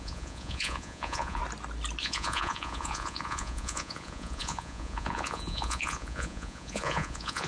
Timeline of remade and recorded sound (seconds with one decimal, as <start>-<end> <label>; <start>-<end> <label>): 0.0-1.4 remade; 1.4-2.0 recorded; 2.0-7.5 remade